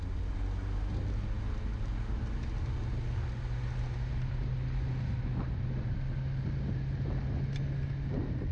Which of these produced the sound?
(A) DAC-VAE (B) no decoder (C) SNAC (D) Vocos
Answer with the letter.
B